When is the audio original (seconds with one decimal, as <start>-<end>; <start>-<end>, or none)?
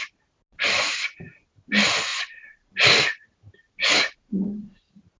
0.0-2.1; 2.7-3.8; 4.8-5.2